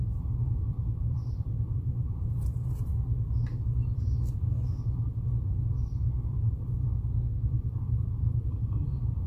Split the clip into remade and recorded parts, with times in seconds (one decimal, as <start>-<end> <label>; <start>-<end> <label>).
0.0-2.9 remade; 2.9-5.3 recorded; 5.3-9.3 remade